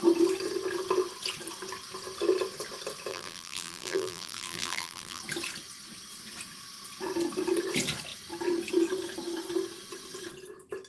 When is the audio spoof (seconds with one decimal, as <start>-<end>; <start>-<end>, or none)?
3.1-5.2